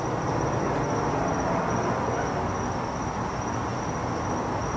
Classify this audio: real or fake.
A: real